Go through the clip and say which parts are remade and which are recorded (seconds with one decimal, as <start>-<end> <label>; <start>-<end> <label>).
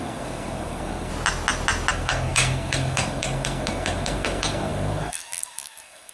0.0-1.1 remade; 1.1-1.9 recorded; 1.9-6.1 remade